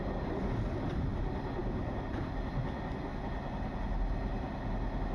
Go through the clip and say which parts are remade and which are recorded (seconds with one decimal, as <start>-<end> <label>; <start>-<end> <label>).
0.0-5.1 recorded